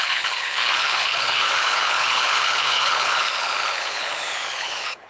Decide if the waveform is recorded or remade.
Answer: remade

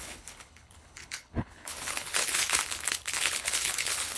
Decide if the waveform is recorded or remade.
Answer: remade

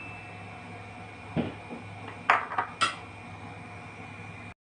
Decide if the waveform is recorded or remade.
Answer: recorded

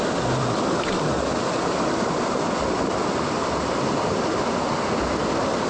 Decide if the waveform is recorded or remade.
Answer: recorded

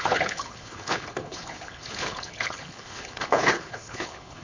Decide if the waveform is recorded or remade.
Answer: remade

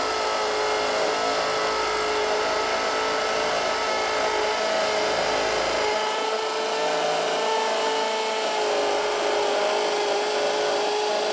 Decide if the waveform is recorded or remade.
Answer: recorded